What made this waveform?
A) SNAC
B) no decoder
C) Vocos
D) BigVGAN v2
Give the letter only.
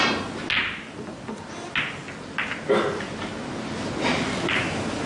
B